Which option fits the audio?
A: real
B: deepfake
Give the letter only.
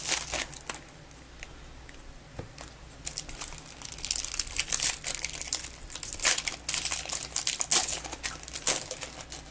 A